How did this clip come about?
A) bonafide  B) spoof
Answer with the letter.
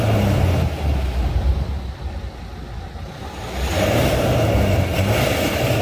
A